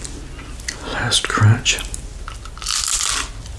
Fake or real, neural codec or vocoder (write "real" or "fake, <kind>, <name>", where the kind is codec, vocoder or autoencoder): real